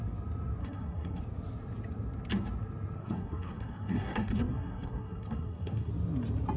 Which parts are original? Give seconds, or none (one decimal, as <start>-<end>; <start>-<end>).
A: 0.0-0.6; 1.2-3.0; 5.9-6.6